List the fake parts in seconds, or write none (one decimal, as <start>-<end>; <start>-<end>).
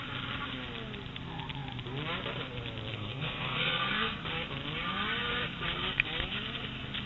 2.9-4.2